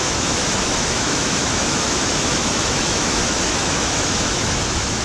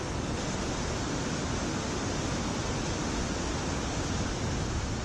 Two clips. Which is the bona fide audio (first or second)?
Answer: second